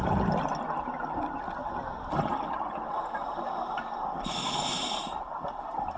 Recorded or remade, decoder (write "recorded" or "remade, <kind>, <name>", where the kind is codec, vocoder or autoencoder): recorded